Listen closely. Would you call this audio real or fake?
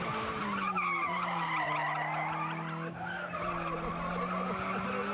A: real